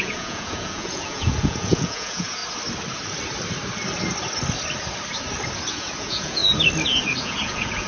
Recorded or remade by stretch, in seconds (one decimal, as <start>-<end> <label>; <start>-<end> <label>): 0.0-2.4 remade; 2.4-5.7 recorded; 5.7-6.4 remade; 6.4-7.2 recorded; 7.2-7.9 remade